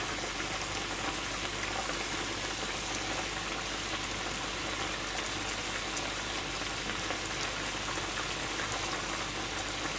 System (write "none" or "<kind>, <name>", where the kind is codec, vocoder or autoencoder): none